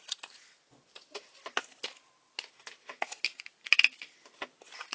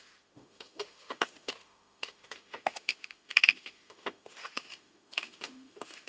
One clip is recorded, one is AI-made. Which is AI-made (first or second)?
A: second